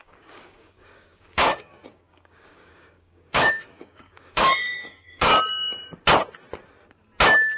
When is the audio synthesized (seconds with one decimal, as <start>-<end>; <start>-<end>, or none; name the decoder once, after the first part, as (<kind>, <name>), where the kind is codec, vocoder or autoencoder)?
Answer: 0.0-5.3 (codec, DAC)